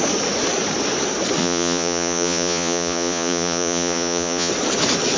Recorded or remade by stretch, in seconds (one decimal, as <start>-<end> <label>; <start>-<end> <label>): 0.0-1.4 recorded; 1.4-4.5 remade; 4.5-5.2 recorded